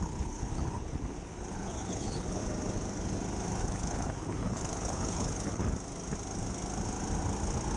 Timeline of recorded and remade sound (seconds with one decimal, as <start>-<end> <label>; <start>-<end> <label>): 0.0-2.4 remade; 2.4-3.6 recorded; 3.6-5.6 remade; 5.6-7.8 recorded